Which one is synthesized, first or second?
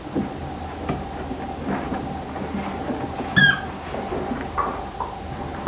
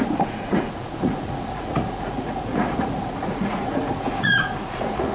second